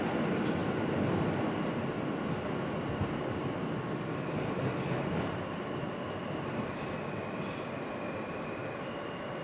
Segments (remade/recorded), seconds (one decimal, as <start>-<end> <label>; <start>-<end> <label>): 0.0-9.4 recorded